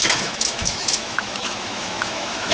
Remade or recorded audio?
remade